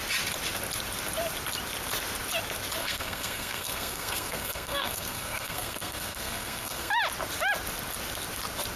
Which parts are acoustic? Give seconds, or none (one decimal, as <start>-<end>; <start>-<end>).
0.0-2.8; 6.9-8.8